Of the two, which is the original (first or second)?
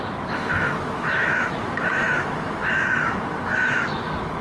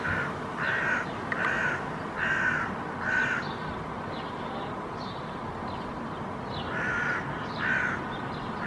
second